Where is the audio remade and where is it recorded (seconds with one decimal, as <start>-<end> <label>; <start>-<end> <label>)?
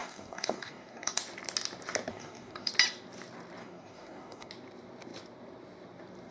0.0-1.2 remade; 1.2-2.1 recorded; 2.1-2.7 remade; 2.7-3.6 recorded; 3.6-4.5 remade; 4.5-6.3 recorded